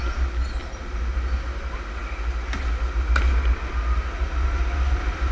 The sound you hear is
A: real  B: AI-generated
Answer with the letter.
A